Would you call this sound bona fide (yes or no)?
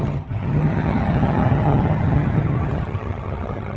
no